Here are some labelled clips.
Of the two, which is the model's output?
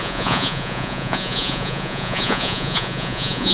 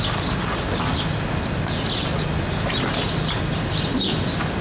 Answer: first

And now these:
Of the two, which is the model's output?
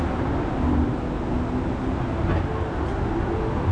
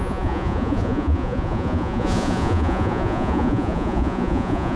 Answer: second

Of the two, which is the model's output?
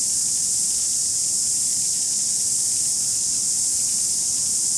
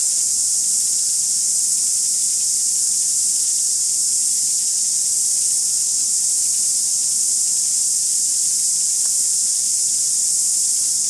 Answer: second